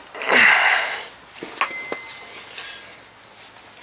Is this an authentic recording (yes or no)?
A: yes